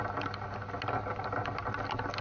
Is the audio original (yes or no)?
yes